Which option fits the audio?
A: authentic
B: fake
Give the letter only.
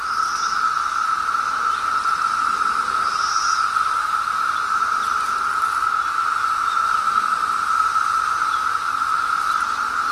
A